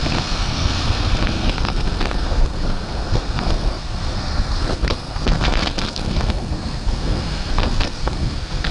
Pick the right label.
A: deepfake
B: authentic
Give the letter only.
A